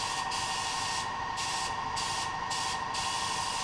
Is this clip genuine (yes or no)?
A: yes